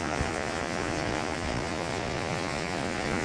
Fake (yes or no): yes